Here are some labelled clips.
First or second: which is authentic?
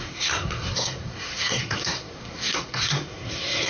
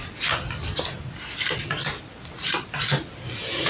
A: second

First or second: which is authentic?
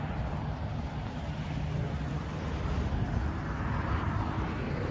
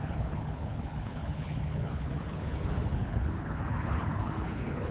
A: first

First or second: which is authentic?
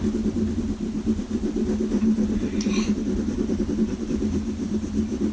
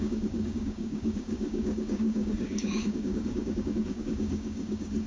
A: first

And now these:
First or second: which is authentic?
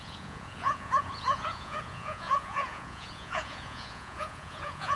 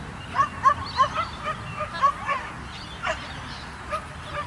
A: second